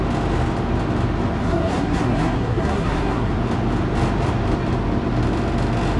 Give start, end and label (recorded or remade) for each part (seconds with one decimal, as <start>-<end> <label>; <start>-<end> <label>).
0.0-1.4 recorded; 1.4-3.3 remade; 3.3-6.0 recorded